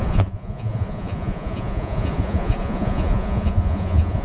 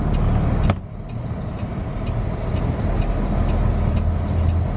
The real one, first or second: second